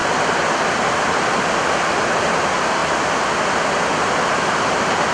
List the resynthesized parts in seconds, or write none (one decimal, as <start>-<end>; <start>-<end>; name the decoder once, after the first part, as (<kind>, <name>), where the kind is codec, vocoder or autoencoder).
none